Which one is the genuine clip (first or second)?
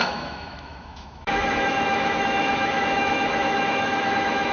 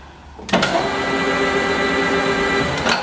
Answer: second